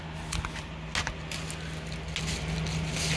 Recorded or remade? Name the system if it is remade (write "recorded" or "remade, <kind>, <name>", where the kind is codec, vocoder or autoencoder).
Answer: recorded